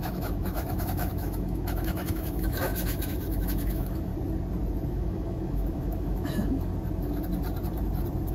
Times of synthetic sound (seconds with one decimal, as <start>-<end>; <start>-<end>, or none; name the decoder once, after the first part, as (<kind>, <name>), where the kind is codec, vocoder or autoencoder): 0.0-4.1 (autoencoder, DAC-VAE); 4.9-6.7